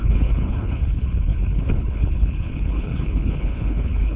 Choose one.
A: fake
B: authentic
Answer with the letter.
A